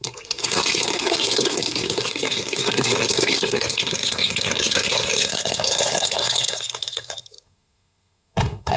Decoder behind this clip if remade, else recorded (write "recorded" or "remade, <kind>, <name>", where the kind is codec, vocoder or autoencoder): remade, codec, SNAC